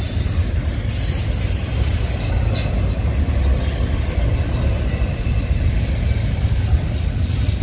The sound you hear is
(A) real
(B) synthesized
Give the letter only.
A